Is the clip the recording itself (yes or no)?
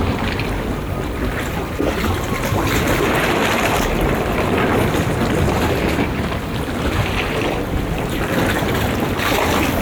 yes